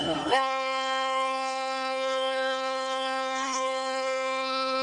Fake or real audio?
fake